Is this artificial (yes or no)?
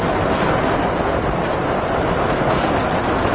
no